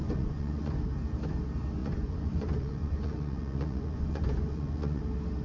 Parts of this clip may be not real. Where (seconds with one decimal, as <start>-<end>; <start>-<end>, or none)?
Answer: 0.0-0.7; 1.8-5.0